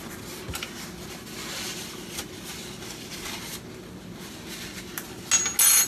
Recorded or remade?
recorded